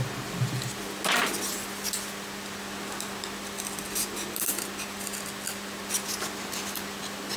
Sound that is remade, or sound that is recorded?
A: recorded